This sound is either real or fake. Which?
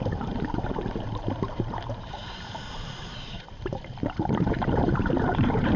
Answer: fake